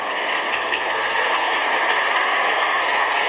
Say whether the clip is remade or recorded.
remade